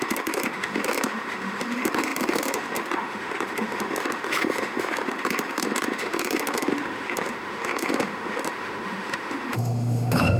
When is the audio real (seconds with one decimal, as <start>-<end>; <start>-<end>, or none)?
none